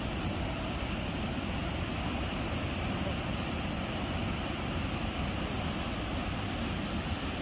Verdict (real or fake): real